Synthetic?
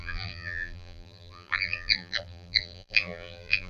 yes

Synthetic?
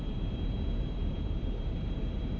yes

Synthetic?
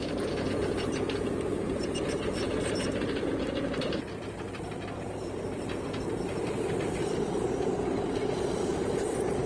yes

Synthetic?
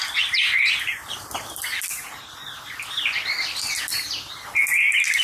no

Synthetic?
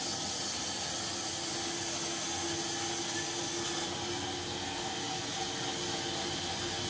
no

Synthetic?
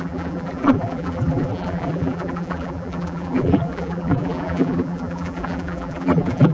yes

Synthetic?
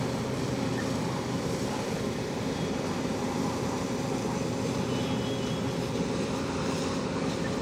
yes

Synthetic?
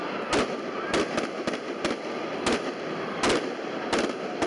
no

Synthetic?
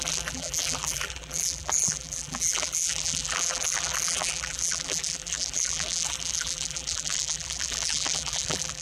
yes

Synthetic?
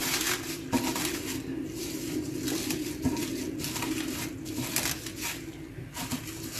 no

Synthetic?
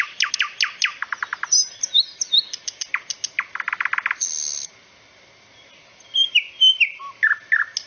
no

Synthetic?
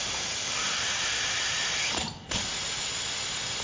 no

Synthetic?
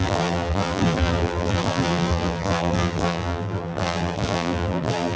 yes